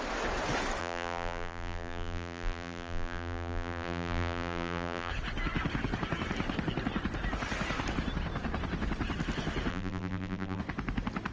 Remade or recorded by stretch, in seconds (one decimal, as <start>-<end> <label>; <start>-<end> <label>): 0.0-0.8 recorded; 0.8-5.1 remade; 5.1-9.7 recorded; 9.7-10.6 remade; 10.6-11.3 recorded